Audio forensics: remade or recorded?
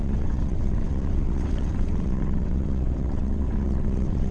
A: remade